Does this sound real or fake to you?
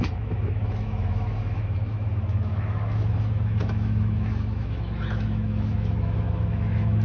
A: fake